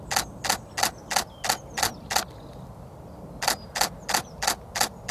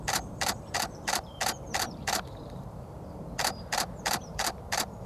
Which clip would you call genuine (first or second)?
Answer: first